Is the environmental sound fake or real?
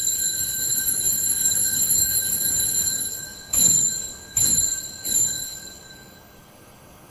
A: fake